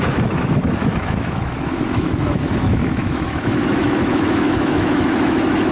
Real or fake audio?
fake